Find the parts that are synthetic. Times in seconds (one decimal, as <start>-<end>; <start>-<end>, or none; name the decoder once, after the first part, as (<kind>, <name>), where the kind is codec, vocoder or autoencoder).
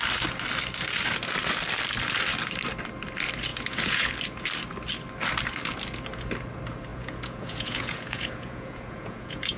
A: 3.5-4.1 (vocoder, Vocos); 6.9-9.6